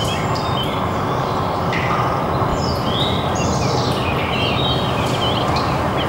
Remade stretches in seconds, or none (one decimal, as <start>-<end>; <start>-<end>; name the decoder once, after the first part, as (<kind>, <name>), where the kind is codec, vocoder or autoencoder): none